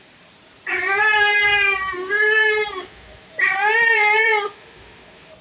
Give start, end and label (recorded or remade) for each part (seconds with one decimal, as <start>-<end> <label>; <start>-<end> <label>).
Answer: 0.0-1.5 remade; 1.5-2.1 recorded; 2.1-4.3 remade; 4.3-4.8 recorded; 4.8-5.4 remade